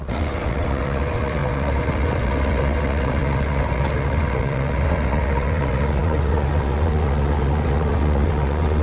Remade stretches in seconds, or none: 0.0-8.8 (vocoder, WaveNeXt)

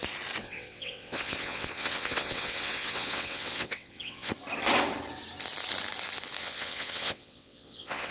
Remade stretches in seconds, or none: 0.4-4.3 (vocoder, WaveNeXt); 6.4-8.1